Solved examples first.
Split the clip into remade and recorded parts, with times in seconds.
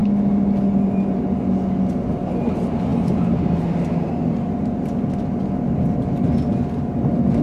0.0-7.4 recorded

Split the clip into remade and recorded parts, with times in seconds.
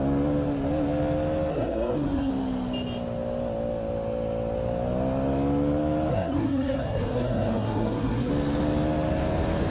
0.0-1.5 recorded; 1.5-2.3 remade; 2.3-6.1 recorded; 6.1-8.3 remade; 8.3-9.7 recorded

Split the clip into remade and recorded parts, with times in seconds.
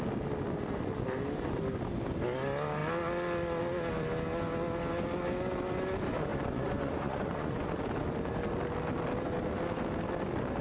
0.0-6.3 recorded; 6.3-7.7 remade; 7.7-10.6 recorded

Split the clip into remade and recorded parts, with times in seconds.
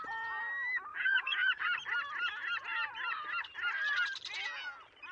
0.0-0.9 recorded; 0.9-1.6 remade; 1.6-5.1 recorded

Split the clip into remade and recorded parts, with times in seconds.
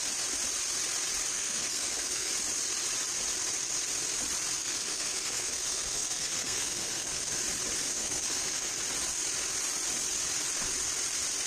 0.0-1.3 recorded; 1.3-2.3 remade; 2.3-4.6 recorded; 4.6-7.4 remade; 7.4-7.9 recorded; 7.9-8.7 remade; 8.7-11.5 recorded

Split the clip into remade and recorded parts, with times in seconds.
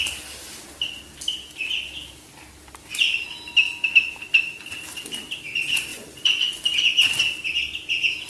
0.0-5.9 recorded; 5.9-6.6 remade; 6.6-8.3 recorded